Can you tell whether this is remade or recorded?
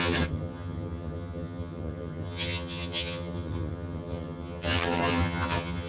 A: remade